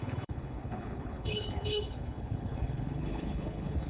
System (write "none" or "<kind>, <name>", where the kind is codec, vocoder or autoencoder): codec, HILCodec